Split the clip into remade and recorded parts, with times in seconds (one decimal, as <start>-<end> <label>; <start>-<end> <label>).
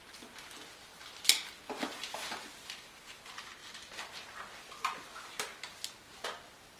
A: 0.0-6.8 recorded